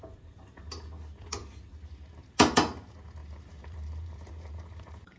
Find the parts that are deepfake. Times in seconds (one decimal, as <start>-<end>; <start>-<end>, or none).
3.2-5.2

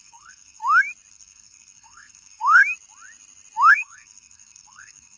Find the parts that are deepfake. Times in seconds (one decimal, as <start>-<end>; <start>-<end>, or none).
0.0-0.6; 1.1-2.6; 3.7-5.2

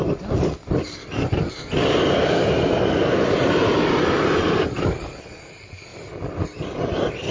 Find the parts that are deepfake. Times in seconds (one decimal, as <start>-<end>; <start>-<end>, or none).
2.2-3.5